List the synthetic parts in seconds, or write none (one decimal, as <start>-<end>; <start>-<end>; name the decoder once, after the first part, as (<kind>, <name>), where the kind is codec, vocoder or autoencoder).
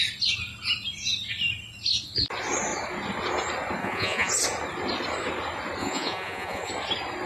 3.8-4.3 (vocoder, Vocos); 5.8-6.7